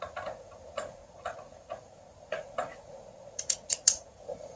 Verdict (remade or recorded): remade